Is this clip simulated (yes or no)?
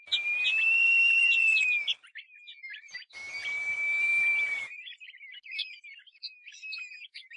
no